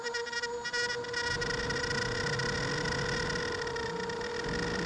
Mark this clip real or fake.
real